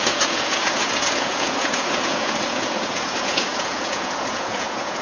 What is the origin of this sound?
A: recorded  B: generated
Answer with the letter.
B